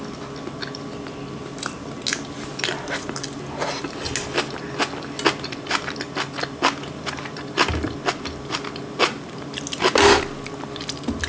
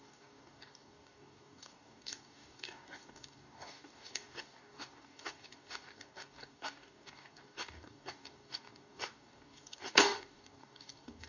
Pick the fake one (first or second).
second